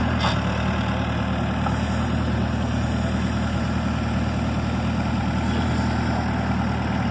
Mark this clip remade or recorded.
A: recorded